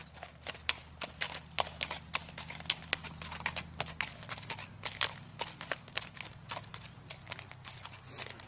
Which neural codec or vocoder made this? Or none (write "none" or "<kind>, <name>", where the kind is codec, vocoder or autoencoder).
none